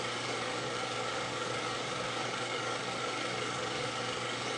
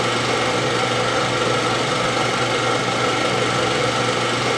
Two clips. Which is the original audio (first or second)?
second